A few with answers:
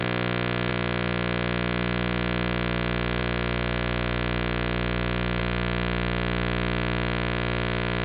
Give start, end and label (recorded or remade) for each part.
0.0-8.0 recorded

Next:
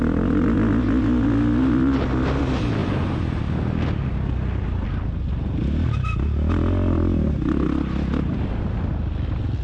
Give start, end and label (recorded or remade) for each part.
0.0-2.8 recorded; 2.8-3.4 remade; 3.4-9.6 recorded

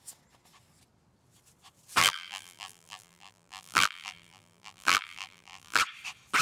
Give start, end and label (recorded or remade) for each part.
0.0-2.0 recorded; 2.0-5.8 remade; 5.8-6.4 recorded